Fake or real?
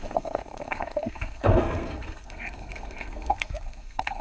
fake